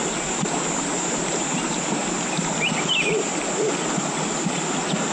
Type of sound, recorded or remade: recorded